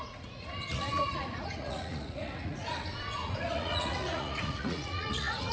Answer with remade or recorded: remade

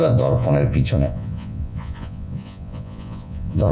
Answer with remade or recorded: remade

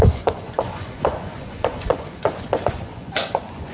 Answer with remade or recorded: remade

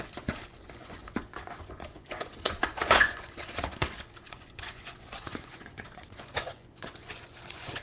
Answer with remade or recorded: remade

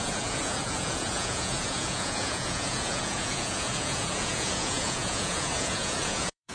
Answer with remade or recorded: remade